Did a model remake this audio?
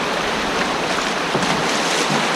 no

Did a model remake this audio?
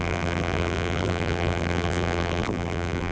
yes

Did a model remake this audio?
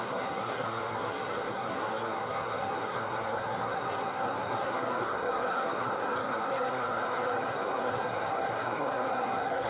yes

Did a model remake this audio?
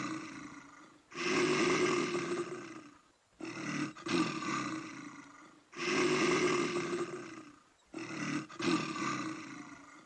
no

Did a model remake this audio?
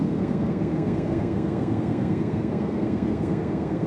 yes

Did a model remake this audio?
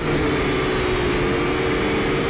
no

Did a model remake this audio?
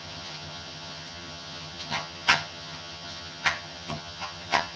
yes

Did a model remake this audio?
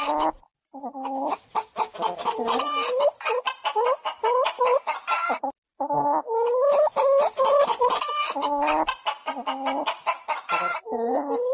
no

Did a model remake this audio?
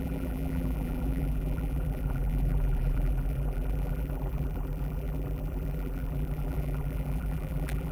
yes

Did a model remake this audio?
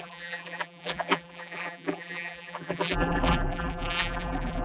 yes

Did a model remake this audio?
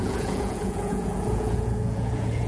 yes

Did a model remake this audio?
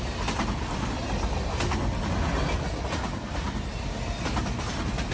no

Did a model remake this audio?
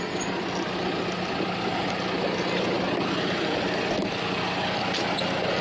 no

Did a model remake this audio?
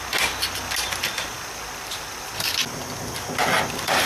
no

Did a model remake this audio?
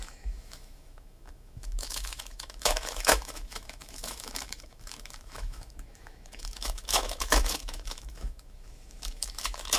yes